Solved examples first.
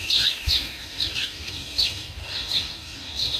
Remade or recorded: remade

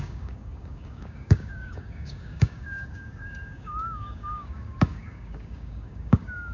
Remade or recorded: remade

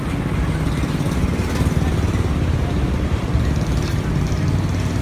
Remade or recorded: recorded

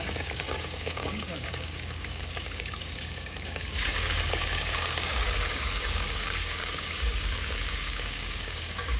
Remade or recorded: remade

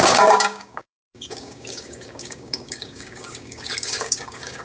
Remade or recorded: remade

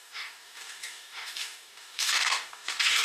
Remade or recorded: remade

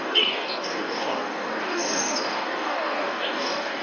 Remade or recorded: remade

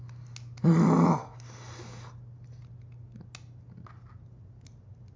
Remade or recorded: recorded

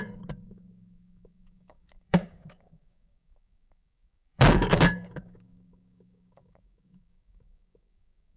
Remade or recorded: remade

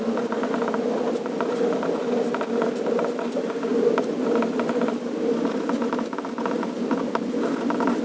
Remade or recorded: recorded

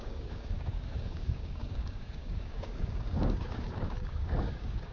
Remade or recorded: remade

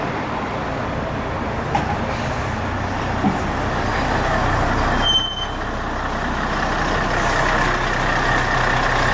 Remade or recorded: recorded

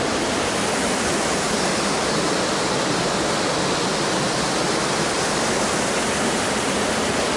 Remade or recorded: recorded